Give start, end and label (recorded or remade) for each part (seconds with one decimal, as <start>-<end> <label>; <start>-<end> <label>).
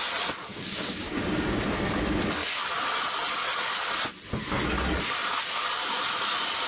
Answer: 0.0-0.5 recorded; 0.5-1.6 remade; 1.6-6.7 recorded